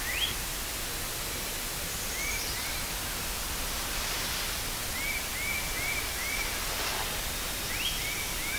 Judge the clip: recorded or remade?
recorded